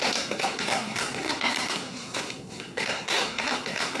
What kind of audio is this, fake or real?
fake